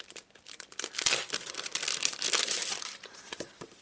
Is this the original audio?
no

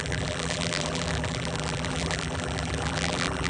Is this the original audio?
no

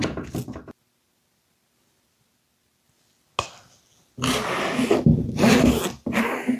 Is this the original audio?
yes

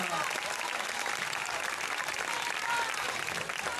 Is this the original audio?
no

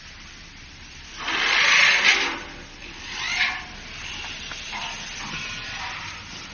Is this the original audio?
no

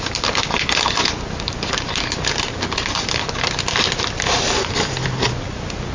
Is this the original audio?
yes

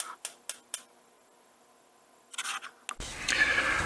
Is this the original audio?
yes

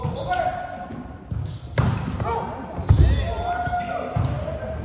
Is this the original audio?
no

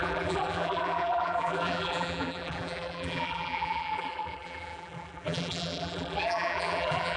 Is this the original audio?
no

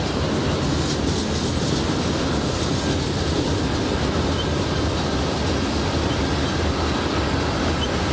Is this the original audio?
yes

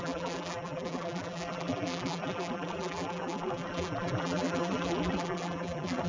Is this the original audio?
no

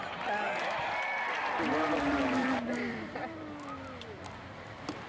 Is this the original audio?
no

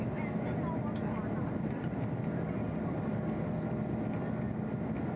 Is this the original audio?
yes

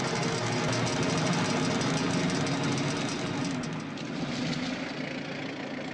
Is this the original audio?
yes